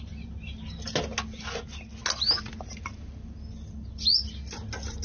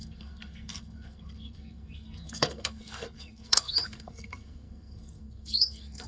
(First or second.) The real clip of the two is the first